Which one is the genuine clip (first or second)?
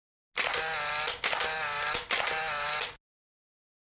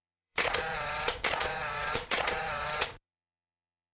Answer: first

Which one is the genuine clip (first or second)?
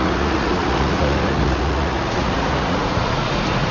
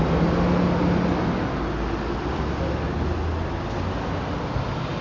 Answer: second